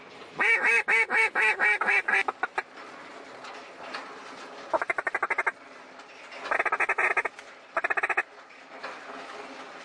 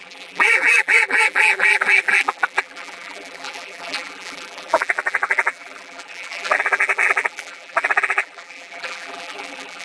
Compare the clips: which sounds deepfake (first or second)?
second